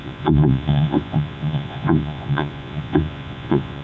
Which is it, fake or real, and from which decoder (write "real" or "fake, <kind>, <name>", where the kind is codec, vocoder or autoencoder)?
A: fake, vocoder, Vocos